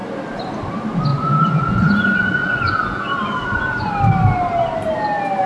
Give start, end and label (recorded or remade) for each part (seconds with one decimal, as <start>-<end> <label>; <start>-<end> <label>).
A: 0.0-1.1 recorded; 1.1-3.9 remade; 3.9-5.5 recorded